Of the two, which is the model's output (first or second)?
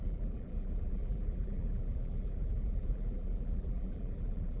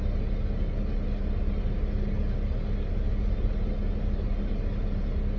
first